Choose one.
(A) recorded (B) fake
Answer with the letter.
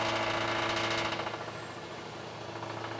A